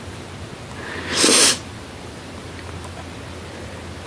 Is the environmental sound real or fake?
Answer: real